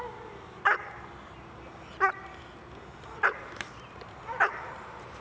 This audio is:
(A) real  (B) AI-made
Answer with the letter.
A